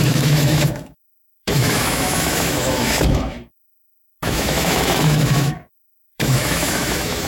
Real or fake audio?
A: fake